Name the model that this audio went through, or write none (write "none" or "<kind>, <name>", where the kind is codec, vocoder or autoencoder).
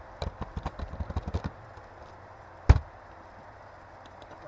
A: none